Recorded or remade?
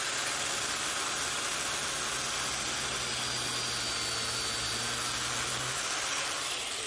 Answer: recorded